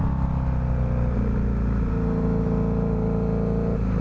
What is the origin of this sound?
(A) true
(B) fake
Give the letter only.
A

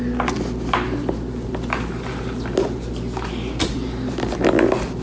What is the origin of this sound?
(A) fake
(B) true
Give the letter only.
B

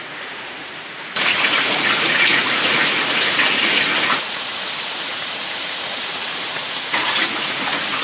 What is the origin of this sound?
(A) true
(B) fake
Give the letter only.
B